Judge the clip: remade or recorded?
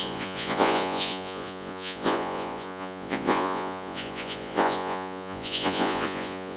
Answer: remade